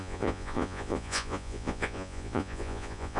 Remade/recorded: remade